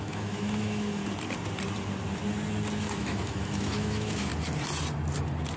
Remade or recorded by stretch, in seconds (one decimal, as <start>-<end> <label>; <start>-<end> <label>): 0.0-1.0 remade; 1.0-2.8 recorded; 2.8-4.3 remade; 4.3-5.6 recorded

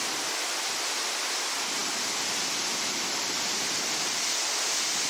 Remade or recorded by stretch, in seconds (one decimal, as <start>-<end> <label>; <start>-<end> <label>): 0.0-1.8 recorded; 1.8-4.6 remade; 4.6-5.1 recorded

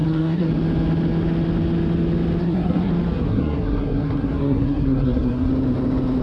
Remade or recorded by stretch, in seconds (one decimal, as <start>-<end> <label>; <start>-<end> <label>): 0.0-0.5 remade; 0.5-2.4 recorded; 2.4-2.9 remade; 2.9-3.3 recorded; 3.3-5.5 remade; 5.5-6.2 recorded

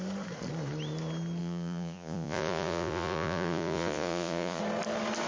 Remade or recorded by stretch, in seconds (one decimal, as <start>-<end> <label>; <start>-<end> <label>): 0.0-1.4 recorded; 1.4-4.6 remade; 4.6-5.3 recorded

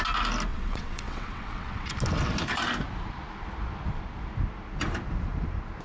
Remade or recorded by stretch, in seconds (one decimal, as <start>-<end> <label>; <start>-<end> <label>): 0.0-0.5 recorded; 0.5-1.9 remade; 1.9-5.8 recorded

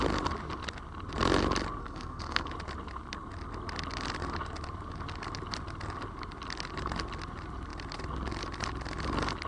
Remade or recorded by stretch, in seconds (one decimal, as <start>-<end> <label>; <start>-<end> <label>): 0.0-1.8 recorded; 1.8-2.5 remade; 2.5-9.5 recorded